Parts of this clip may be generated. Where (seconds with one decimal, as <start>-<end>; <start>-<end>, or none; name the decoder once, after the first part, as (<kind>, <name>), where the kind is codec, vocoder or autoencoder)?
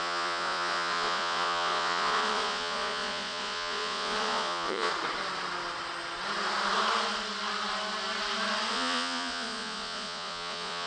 0.0-4.9 (vocoder, Vocos); 8.7-10.9